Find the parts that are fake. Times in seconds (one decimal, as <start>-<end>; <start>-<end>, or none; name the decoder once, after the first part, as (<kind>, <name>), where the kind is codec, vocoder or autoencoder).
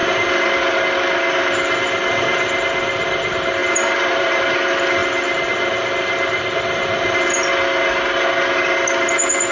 3.6-4.4 (vocoder, BigVGAN v2)